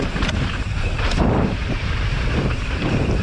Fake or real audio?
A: fake